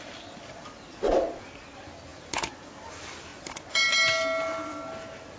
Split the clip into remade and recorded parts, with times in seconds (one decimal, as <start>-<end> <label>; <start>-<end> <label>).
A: 0.0-5.4 recorded